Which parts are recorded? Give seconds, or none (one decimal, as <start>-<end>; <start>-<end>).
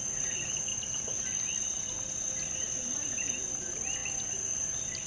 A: 0.0-5.1